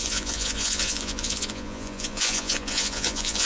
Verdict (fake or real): fake